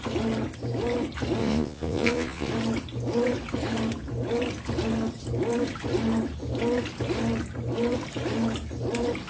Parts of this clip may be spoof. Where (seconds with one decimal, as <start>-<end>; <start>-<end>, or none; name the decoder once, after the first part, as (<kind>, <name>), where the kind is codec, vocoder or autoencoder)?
1.4-2.5 (vocoder, Vocos)